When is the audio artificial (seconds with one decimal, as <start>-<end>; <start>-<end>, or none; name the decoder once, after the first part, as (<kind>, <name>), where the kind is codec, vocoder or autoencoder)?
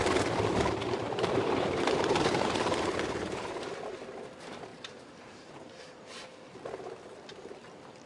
0.8-2.8 (vocoder, BigVGAN v2); 4.7-6.6